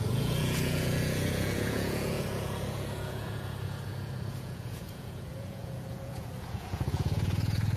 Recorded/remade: remade